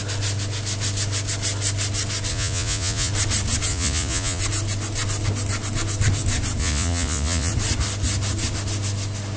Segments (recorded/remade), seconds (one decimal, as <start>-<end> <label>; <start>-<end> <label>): 0.0-2.3 recorded; 2.3-3.1 remade; 3.1-3.7 recorded; 3.7-4.4 remade; 4.4-6.6 recorded; 6.6-7.5 remade; 7.5-9.4 recorded